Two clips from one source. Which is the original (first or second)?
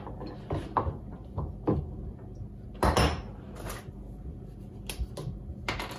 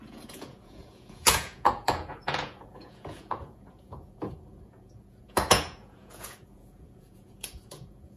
first